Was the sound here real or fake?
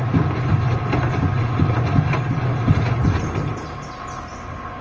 fake